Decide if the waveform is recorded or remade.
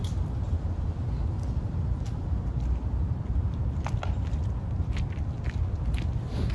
recorded